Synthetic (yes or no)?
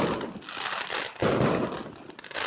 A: no